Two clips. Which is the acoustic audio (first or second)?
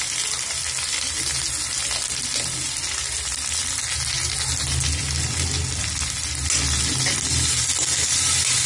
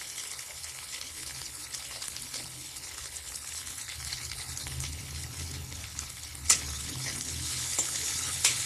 first